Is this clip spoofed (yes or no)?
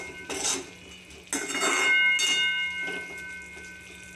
no